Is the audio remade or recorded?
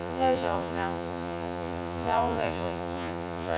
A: remade